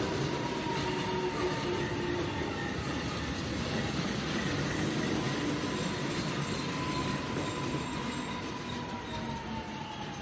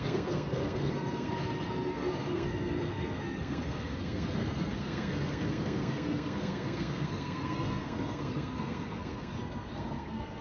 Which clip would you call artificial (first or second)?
second